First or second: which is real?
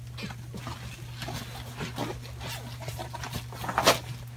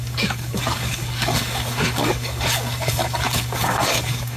first